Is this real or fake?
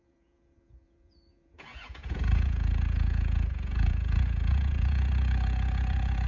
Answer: fake